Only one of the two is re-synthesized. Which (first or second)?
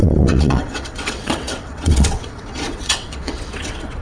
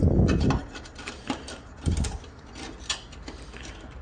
first